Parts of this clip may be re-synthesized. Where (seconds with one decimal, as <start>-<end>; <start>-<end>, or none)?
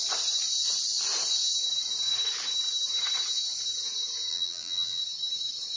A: 4.3-5.0